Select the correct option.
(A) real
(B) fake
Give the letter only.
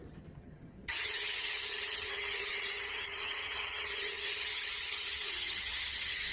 B